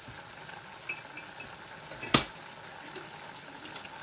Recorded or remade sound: recorded